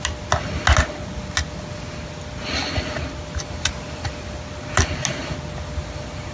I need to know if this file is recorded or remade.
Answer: recorded